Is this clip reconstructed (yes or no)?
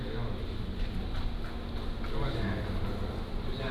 no